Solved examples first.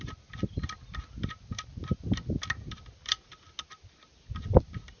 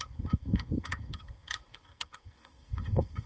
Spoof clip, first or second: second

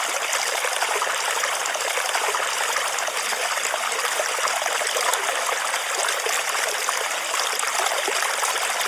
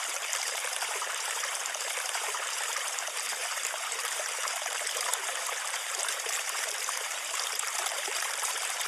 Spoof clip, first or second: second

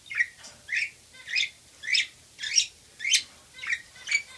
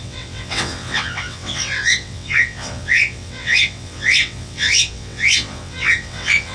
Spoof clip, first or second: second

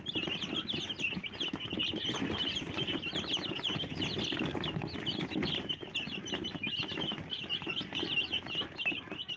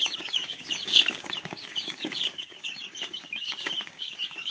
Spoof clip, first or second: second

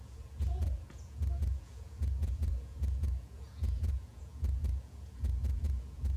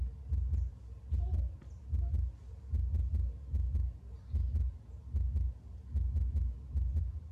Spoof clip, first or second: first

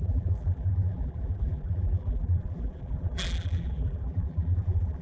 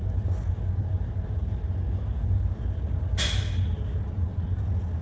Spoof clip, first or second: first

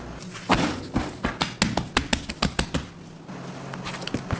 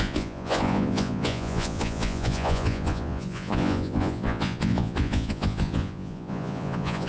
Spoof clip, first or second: second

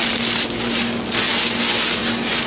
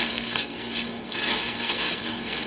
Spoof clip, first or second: second